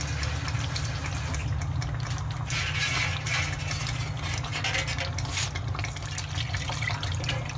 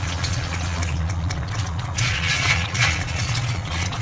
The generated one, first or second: second